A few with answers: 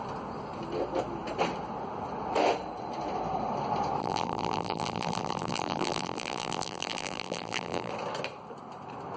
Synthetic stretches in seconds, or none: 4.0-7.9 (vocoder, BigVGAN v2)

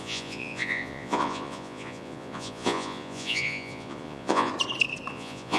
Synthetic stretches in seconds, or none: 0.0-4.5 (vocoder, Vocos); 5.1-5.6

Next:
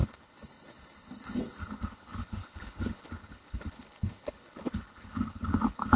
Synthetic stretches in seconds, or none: 0.0-6.0 (codec, HILCodec)

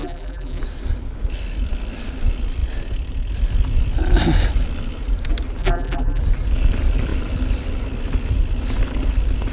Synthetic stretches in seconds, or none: 0.0-0.6 (vocoder, BigVGAN v2); 5.6-6.2

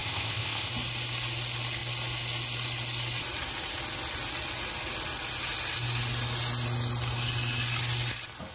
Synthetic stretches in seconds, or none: 0.0-0.7 (codec, ZipCodec)

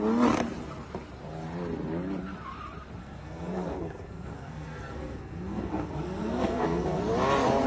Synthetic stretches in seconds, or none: 3.0-7.0 (codec, SNAC)

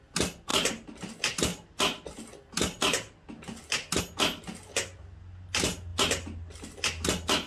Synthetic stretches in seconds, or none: none